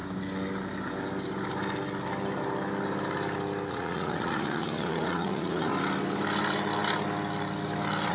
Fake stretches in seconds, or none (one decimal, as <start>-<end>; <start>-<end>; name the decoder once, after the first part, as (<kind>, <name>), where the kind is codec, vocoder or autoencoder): 3.7-5.7 (vocoder, Vocos)